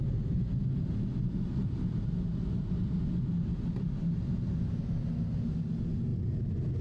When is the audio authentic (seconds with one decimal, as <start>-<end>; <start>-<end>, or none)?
0.0-6.8